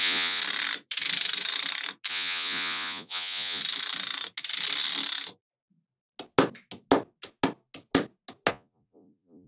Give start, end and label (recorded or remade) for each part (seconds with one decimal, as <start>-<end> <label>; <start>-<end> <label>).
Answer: 0.0-0.4 remade; 0.4-2.1 recorded; 2.1-3.6 remade; 3.6-8.5 recorded; 8.5-9.5 remade